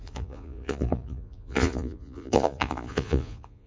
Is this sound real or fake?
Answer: fake